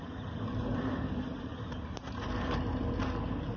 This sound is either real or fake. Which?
real